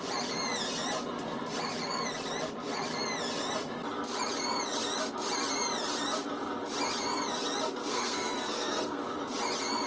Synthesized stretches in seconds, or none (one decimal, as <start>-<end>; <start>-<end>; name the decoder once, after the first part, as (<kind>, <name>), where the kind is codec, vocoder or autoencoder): 7.9-9.0 (codec, SNAC)